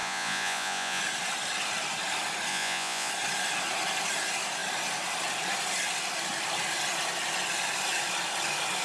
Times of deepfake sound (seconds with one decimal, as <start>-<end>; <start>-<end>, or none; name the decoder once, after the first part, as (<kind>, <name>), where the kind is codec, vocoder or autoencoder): 0.0-1.0 (vocoder, Vocos); 2.5-3.1

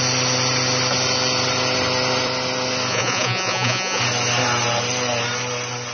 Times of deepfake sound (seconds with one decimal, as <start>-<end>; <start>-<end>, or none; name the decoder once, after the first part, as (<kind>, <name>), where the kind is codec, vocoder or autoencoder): 2.9-4.0 (vocoder, Vocos)